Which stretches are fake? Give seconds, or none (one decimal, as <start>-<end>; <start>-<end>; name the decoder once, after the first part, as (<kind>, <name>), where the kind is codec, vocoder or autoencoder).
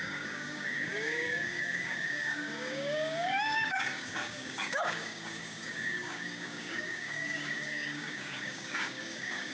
0.0-9.5 (codec, DAC)